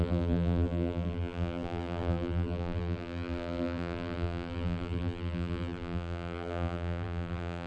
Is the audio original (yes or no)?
no